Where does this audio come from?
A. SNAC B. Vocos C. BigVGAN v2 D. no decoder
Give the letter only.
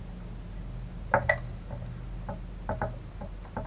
D